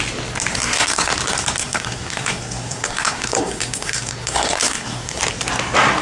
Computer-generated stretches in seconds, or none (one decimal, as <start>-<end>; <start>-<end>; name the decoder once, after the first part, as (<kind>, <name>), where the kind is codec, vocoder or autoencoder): 0.5-1.1 (codec, SNAC); 1.6-5.2